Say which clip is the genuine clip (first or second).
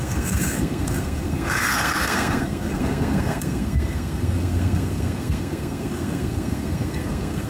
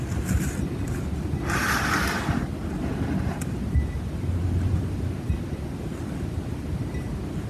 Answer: second